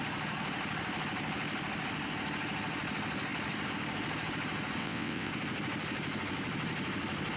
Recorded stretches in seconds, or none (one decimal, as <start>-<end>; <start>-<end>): 0.0-4.8; 5.3-7.4